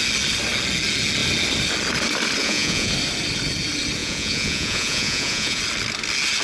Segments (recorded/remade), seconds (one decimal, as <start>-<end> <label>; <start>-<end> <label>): 0.0-2.4 recorded; 2.4-2.9 remade; 2.9-4.0 recorded; 4.0-5.6 remade; 5.6-6.4 recorded